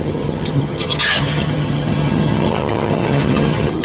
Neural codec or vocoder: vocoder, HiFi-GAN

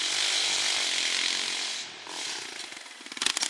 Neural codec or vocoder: none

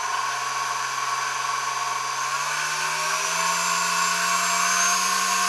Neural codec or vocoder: none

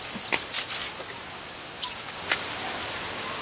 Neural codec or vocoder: none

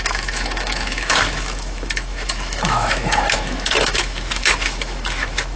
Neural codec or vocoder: autoencoder, DAC-VAE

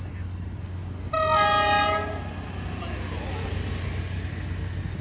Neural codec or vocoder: none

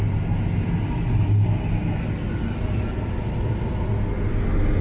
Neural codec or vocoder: none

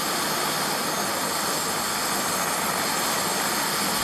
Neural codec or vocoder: none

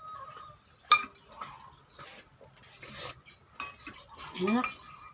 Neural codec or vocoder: none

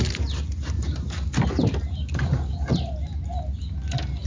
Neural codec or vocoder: none